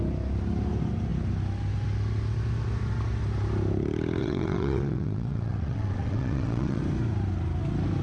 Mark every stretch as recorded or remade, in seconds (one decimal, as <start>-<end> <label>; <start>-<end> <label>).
0.0-4.2 recorded; 4.2-6.8 remade; 6.8-8.0 recorded